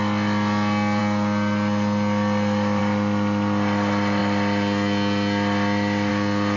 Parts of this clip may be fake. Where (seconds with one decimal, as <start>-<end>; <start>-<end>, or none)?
none